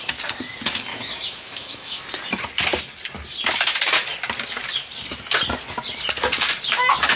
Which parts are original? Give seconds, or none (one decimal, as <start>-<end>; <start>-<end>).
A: 0.0-0.9; 2.0-7.2